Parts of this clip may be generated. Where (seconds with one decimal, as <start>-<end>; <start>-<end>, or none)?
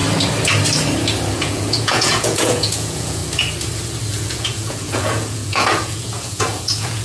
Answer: 1.3-3.2; 4.1-7.0